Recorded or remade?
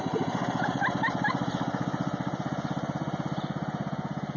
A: recorded